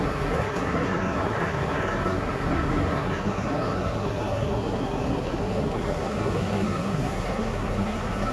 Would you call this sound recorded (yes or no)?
no